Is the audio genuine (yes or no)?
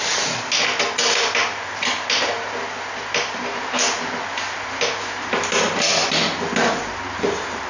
yes